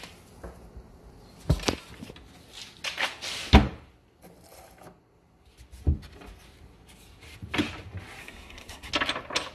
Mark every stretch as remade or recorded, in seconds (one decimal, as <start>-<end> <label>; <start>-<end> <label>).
0.0-8.2 recorded; 8.2-8.9 remade; 8.9-9.5 recorded